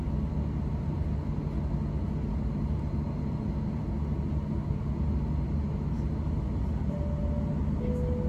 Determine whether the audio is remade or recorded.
recorded